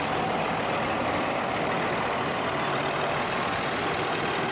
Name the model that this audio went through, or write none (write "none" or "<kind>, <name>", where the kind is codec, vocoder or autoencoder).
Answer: none